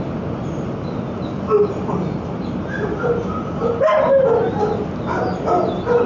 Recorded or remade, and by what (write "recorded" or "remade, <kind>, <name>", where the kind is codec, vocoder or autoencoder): recorded